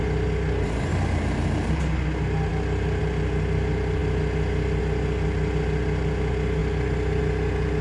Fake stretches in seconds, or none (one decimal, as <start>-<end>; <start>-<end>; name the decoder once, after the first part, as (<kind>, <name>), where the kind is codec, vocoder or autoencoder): 0.9-1.8 (vocoder, BigVGAN v2)